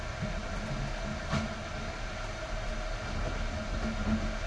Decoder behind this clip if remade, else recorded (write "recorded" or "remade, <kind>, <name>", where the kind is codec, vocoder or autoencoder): recorded